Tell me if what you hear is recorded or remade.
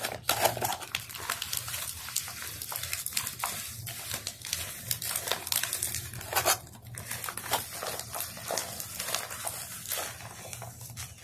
recorded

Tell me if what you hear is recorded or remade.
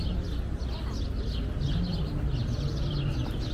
recorded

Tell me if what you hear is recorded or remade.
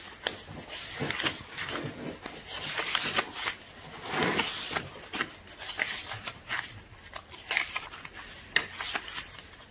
recorded